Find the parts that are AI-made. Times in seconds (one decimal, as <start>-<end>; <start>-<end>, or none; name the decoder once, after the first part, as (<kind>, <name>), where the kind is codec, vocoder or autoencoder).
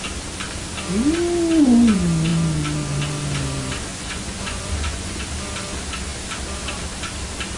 3.9-5.2 (vocoder, Vocos)